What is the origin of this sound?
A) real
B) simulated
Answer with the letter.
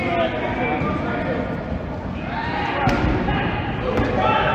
A